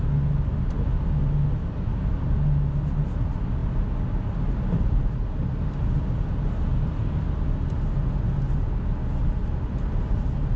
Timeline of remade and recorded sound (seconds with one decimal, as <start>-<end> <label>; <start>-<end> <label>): 0.0-10.6 recorded

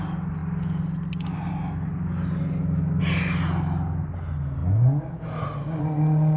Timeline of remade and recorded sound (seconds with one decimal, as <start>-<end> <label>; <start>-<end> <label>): 0.0-6.4 recorded

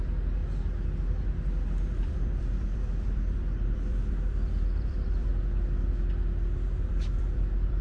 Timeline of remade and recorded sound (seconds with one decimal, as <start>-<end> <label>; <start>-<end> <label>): 0.0-0.4 remade; 0.4-2.0 recorded; 2.0-5.3 remade; 5.3-6.4 recorded; 6.4-7.8 remade

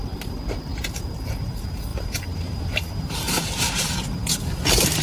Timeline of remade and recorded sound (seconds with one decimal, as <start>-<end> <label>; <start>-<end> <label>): 0.0-1.9 recorded; 1.9-5.0 remade

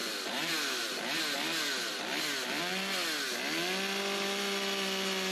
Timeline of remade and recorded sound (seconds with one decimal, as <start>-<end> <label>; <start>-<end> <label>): 0.0-2.6 remade; 2.6-5.3 recorded